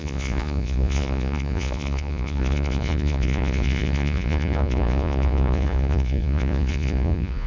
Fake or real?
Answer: fake